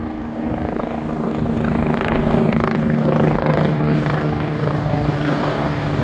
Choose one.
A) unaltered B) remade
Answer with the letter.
B